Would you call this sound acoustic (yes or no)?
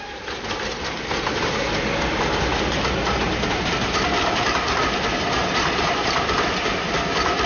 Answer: yes